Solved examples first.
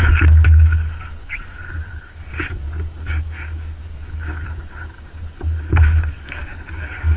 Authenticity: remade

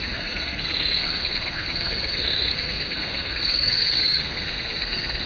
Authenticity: remade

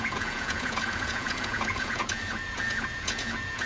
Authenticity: remade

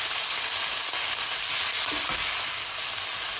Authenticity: recorded